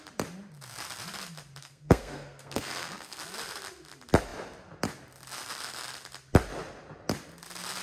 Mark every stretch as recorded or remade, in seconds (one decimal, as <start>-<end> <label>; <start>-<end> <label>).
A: 0.0-1.6 recorded; 1.6-3.2 remade; 3.2-7.8 recorded